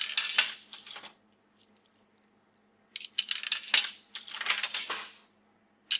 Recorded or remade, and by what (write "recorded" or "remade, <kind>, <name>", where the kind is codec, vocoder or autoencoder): recorded